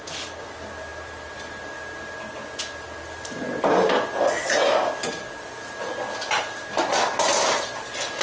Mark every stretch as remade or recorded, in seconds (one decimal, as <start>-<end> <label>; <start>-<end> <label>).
0.0-8.2 recorded